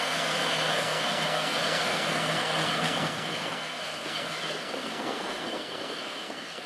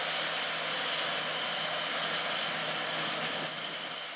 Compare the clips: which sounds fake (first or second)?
first